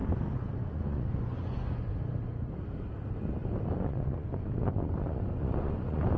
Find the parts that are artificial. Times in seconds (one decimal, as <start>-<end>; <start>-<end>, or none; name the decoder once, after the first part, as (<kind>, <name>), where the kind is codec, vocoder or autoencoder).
0.5-1.9 (vocoder, Vocos); 3.8-6.2

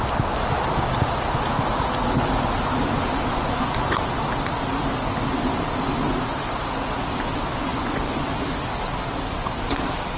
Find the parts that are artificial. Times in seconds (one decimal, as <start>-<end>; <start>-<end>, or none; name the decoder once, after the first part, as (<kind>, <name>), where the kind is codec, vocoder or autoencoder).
3.3-4.0 (vocoder, Vocos); 7.7-8.3

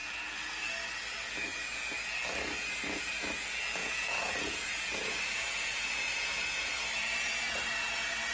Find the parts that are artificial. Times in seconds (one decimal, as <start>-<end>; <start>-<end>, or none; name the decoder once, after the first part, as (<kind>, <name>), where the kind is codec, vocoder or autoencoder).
3.8-6.8 (vocoder, Vocos)